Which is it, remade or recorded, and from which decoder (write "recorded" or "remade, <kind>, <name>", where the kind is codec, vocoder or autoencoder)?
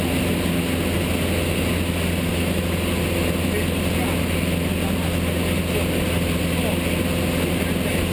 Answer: recorded